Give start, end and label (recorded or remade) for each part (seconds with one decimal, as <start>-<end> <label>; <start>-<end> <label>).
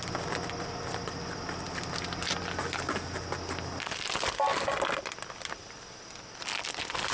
0.0-7.1 recorded